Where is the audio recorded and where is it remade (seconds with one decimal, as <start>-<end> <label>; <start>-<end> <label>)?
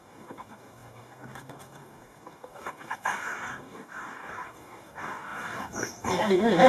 0.0-6.7 remade